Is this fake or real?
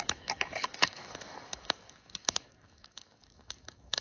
fake